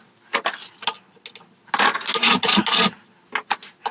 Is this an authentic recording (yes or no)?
yes